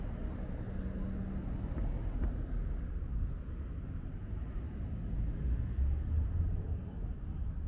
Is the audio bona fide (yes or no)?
yes